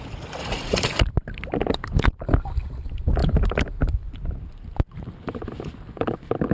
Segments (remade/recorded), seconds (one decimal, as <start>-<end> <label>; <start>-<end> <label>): 0.0-0.4 recorded; 0.4-1.0 remade; 1.0-6.5 recorded